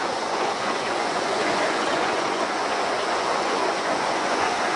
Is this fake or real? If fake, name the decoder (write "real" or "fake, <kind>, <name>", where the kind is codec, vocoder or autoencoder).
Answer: fake, vocoder, Vocos